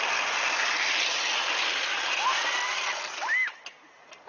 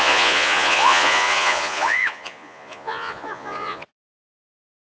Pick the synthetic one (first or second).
second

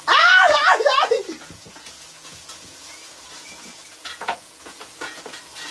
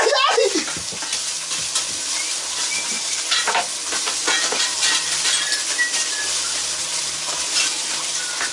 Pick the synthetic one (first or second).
first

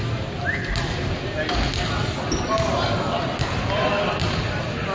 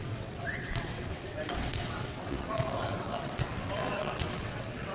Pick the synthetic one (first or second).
second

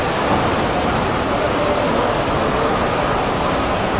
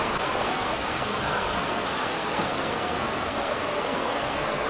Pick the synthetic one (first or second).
second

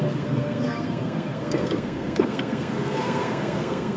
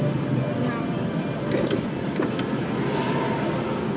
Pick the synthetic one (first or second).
first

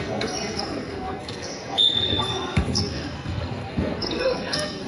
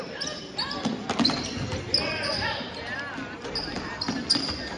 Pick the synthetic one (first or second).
first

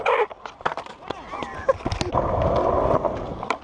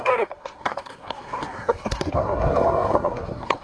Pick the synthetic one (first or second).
second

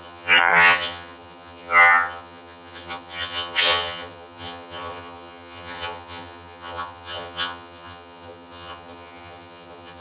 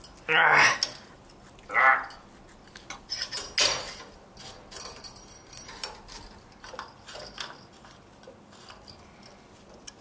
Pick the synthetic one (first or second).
first